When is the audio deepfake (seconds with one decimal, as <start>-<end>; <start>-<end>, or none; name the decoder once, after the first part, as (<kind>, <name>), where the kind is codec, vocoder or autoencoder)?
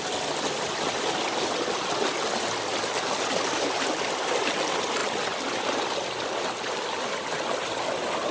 none